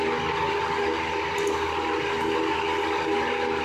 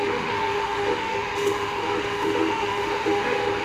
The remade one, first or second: second